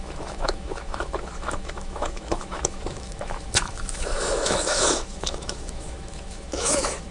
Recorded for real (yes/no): no